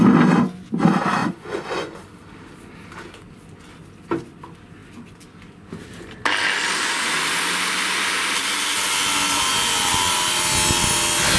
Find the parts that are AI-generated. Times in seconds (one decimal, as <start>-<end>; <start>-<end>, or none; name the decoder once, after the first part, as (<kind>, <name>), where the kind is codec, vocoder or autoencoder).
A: 1.2-2.0 (vocoder, Vocos)